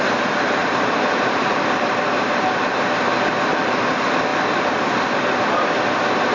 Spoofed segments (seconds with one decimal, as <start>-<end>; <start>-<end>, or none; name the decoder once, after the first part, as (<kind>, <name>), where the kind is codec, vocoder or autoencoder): 0.6-3.2 (vocoder, BigVGAN v2); 4.3-5.2